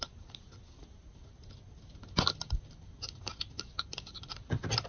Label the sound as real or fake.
real